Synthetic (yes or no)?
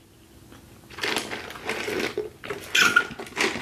no